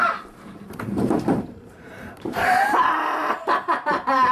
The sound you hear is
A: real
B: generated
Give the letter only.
B